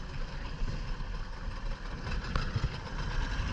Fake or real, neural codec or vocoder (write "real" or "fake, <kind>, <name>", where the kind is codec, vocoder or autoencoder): real